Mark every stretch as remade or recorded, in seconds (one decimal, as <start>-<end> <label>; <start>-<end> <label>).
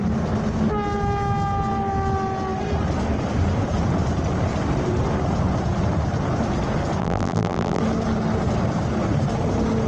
0.0-7.0 recorded; 7.0-7.8 remade; 7.8-9.9 recorded